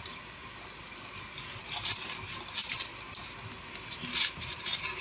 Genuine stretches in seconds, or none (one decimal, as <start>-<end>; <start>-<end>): 0.0-5.0